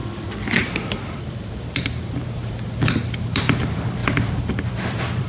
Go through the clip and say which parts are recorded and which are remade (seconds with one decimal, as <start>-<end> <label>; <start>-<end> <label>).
0.0-5.3 remade